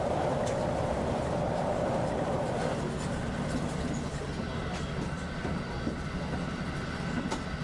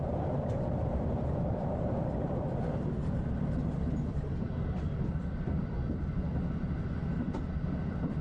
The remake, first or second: second